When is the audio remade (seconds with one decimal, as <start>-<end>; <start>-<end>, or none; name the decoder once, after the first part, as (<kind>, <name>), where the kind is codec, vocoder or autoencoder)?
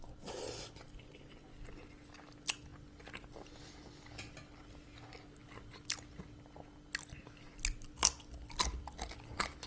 none